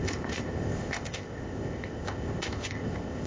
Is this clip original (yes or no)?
no